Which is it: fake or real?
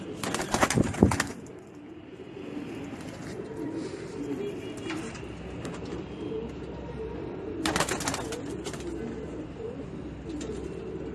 real